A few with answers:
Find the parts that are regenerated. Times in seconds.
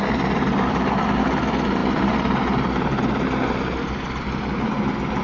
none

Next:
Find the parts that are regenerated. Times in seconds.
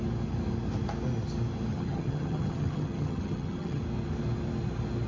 1.7-3.8